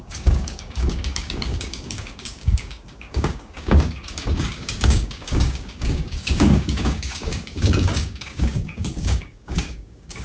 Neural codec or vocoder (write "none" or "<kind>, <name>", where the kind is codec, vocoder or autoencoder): codec, DAC